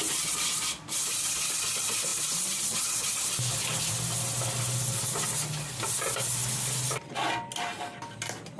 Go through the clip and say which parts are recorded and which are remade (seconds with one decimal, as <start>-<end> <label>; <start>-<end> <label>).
0.0-8.6 recorded